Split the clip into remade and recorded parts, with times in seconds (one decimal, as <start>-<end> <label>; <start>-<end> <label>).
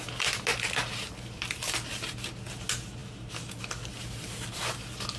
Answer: 0.0-5.2 recorded